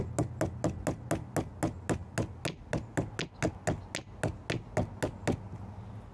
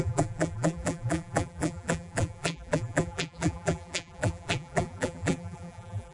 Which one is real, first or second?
first